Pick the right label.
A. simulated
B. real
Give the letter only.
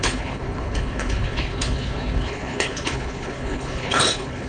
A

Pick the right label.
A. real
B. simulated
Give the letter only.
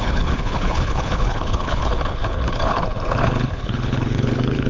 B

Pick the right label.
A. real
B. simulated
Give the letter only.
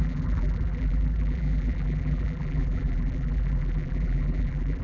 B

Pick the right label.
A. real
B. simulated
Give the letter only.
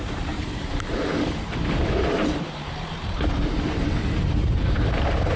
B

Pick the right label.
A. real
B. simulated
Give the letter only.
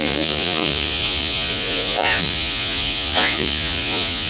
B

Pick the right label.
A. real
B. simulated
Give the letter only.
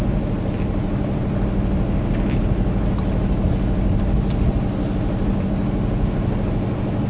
A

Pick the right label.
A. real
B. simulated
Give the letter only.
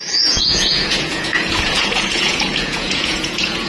B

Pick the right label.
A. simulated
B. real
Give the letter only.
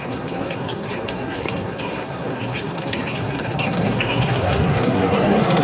A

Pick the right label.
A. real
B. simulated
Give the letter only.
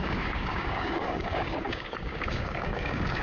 B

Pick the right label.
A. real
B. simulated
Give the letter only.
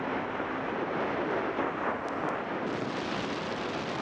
A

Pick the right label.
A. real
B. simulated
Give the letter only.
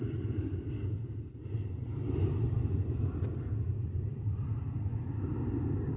A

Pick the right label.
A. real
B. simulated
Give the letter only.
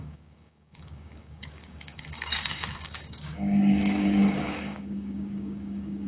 B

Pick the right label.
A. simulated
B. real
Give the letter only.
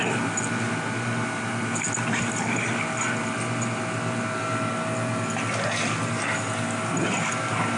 B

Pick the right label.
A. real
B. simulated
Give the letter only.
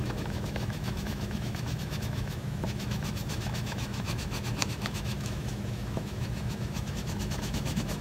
B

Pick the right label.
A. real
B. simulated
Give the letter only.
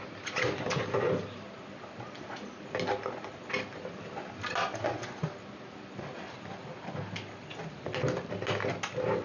A